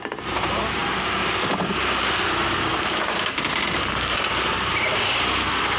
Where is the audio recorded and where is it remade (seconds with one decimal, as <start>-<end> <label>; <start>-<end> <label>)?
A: 0.0-5.8 recorded